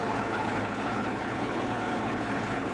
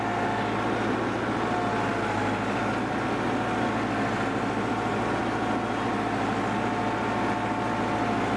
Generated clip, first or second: first